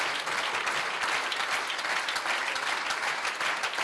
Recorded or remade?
recorded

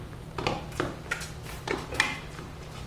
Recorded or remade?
recorded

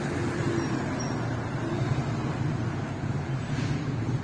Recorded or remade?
recorded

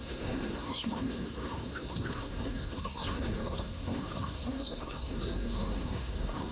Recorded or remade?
remade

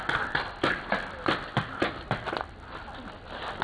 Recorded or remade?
recorded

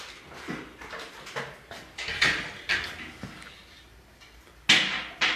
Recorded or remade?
recorded